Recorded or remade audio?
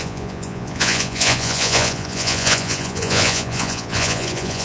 remade